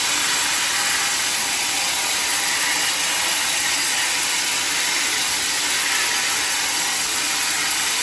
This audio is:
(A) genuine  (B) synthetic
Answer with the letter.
A